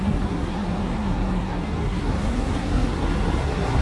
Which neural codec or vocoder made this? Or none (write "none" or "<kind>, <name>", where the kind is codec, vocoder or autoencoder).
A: codec, SNAC